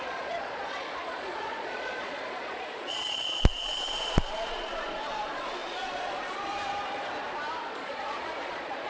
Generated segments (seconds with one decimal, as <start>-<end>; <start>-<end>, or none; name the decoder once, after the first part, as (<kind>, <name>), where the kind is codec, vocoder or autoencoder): 0.0-6.7 (vocoder, Vocos); 7.6-8.9